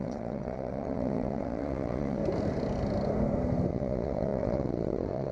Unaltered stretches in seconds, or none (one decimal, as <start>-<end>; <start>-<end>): 2.2-3.7